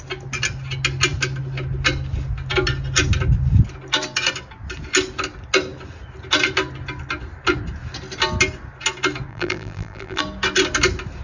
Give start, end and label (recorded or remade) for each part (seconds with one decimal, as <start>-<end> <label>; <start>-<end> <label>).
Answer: 0.0-9.3 recorded; 9.3-10.2 remade; 10.2-11.2 recorded